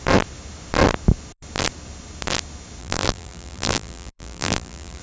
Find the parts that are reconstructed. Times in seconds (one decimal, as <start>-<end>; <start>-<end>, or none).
2.8-5.0